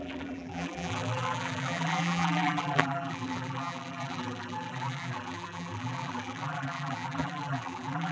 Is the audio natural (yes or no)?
no